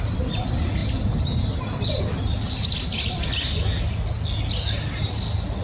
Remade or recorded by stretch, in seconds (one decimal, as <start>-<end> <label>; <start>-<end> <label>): 0.0-5.6 recorded